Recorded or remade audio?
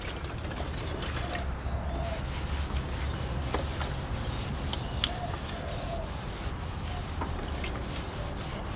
recorded